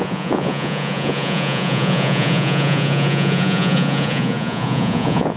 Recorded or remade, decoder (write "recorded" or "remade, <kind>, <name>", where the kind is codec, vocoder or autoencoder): remade, vocoder, Vocos